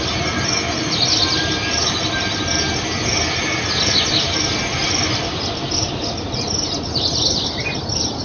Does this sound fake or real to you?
real